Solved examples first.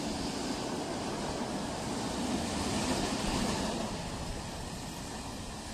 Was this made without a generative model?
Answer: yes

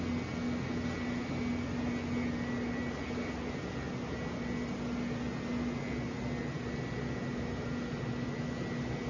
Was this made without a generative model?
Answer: yes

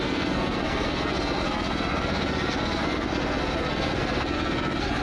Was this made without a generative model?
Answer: no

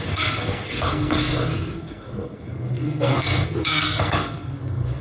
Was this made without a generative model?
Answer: no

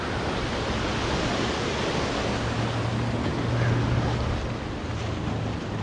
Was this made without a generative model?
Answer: yes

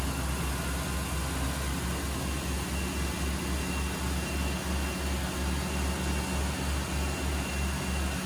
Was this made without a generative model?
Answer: yes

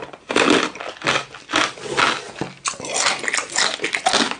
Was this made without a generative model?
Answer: yes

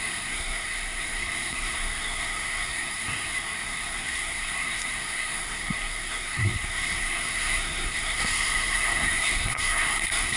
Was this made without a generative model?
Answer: no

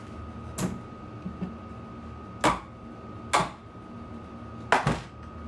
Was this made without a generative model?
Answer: yes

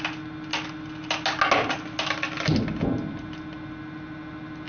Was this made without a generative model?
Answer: yes